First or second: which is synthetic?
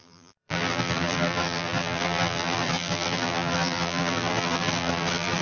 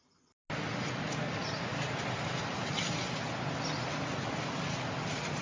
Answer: first